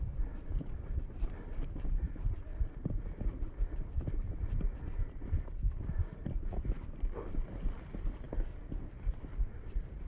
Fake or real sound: real